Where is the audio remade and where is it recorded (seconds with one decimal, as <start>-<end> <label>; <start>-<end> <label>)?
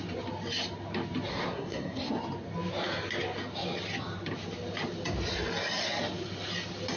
0.0-1.3 recorded; 1.3-2.1 remade; 2.1-7.0 recorded